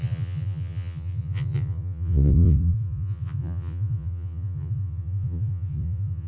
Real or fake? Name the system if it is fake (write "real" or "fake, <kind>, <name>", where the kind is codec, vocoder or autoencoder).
fake, vocoder, Vocos